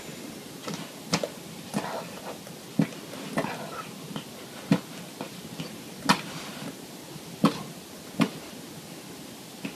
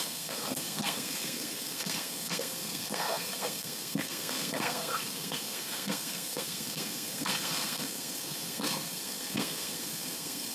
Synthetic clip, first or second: second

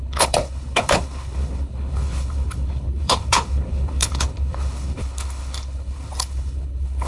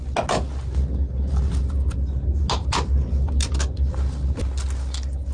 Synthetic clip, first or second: first